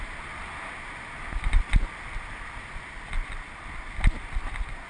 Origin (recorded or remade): recorded